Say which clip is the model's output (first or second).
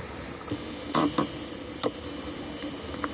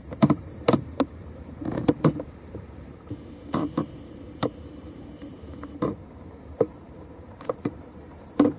second